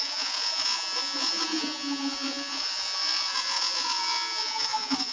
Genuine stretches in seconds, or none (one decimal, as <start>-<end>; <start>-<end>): none